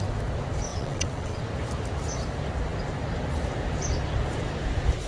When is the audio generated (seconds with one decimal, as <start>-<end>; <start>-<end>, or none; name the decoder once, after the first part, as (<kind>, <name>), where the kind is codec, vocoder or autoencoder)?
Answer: 0.7-1.4 (vocoder, WaveNeXt)